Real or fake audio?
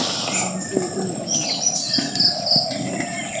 real